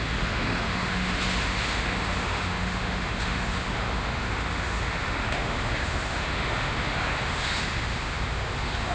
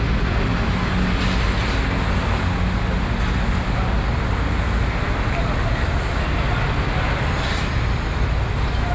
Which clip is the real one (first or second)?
second